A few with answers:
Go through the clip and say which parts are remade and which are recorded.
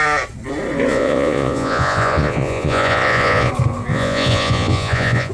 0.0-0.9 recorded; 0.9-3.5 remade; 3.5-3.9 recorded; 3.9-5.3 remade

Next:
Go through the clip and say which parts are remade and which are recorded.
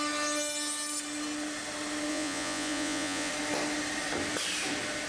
0.0-2.1 recorded; 2.1-3.3 remade; 3.3-5.1 recorded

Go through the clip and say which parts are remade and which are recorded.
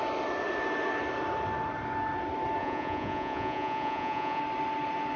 0.0-2.6 recorded; 2.6-4.4 remade; 4.4-5.2 recorded